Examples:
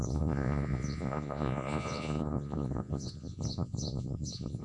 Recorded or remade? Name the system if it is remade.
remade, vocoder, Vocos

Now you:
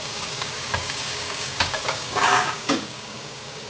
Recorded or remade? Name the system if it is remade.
remade, codec, DAC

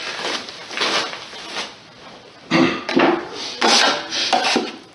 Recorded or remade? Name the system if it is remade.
recorded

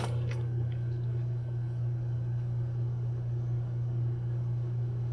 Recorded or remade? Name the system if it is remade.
remade, codec, DAC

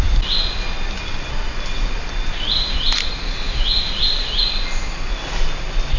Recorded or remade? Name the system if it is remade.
recorded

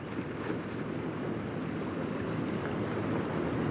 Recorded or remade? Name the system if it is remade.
remade, vocoder, BigVGAN v2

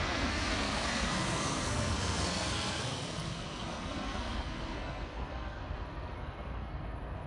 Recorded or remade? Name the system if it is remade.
remade, codec, SNAC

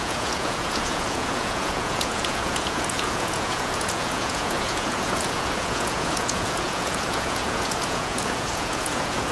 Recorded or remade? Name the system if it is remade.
remade, vocoder, Vocos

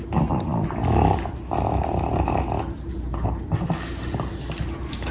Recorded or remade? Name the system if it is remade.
recorded